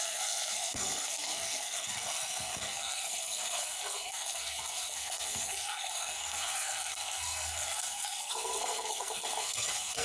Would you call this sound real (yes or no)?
no